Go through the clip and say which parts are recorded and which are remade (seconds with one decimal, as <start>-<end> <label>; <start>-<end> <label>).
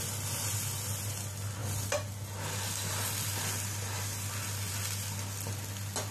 0.0-6.1 recorded